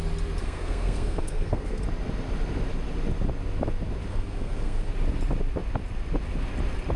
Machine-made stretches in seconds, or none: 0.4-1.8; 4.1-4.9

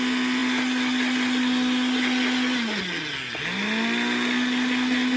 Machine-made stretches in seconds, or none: none

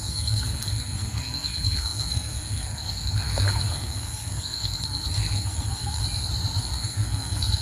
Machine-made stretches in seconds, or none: 0.0-6.0; 6.6-7.6

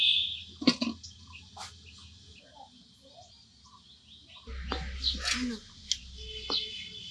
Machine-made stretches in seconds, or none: none

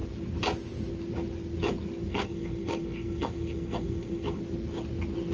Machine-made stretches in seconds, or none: 2.1-4.4

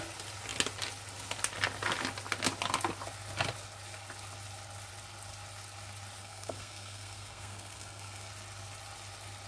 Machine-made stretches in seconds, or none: 6.2-8.3

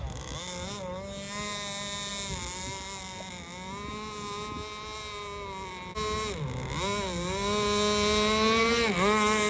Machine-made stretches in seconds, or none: none